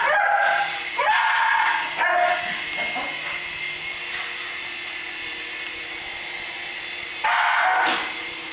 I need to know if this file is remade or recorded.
recorded